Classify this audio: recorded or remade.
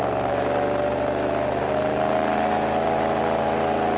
recorded